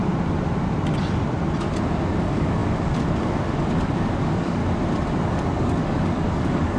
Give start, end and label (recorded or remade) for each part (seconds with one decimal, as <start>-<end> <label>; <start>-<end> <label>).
0.0-2.2 recorded; 2.2-4.6 remade; 4.6-5.2 recorded; 5.2-6.8 remade